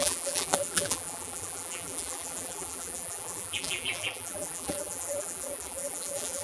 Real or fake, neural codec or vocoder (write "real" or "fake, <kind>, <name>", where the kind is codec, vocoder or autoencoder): fake, vocoder, BigVGAN v2